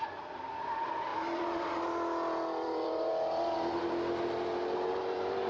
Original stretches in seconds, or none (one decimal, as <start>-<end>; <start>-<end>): 3.1-4.9